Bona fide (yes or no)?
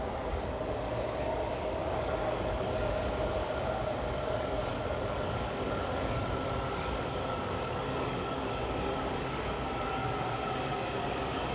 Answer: no